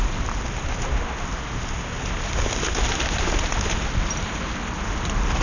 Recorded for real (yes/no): yes